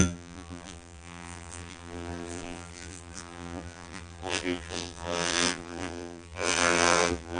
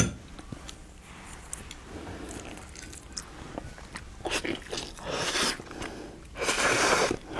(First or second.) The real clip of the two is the second